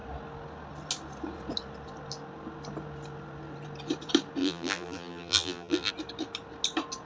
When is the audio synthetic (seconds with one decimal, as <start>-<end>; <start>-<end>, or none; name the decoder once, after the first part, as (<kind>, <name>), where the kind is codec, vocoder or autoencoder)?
4.4-5.9 (vocoder, BigVGAN v2)